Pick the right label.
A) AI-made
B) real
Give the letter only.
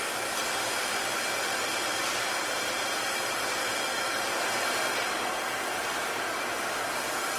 B